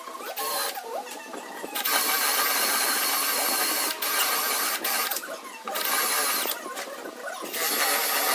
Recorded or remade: recorded